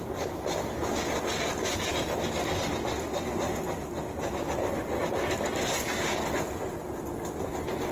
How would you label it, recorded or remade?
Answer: recorded